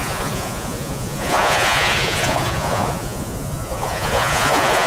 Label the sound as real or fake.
fake